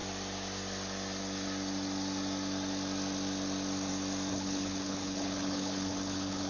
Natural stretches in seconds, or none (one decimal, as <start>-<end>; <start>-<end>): 0.0-4.3